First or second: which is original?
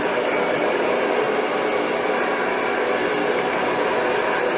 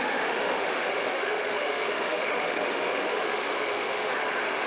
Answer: first